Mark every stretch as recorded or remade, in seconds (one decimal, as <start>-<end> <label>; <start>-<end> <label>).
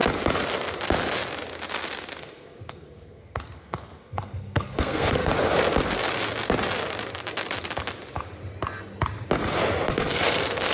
0.0-2.2 recorded; 2.2-5.3 remade; 5.3-9.9 recorded; 9.9-10.7 remade